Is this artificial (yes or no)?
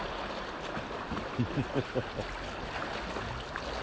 no